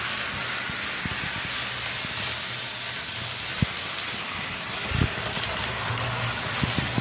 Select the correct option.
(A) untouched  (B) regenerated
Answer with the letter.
A